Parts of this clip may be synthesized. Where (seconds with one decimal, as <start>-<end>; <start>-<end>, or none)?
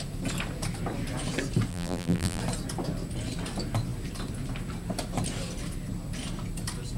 1.7-2.4